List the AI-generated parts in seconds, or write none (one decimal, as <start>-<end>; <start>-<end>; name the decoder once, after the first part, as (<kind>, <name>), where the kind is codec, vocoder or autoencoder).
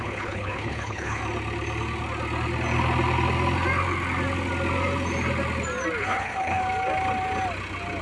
0.0-1.2 (codec, HILCodec); 6.0-6.6